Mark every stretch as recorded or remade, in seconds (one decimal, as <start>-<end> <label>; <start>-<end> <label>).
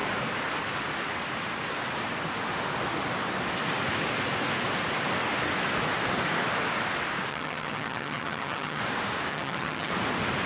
0.0-7.3 recorded; 7.3-8.8 remade; 8.8-9.3 recorded; 9.3-9.9 remade; 9.9-10.5 recorded